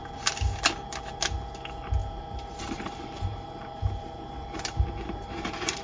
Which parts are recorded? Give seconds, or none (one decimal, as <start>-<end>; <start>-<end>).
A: 0.0-2.0